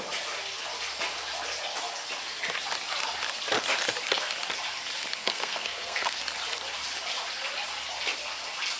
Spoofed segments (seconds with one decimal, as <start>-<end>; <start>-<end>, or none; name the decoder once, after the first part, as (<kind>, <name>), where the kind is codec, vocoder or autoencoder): 5.2-6.2 (codec, SNAC)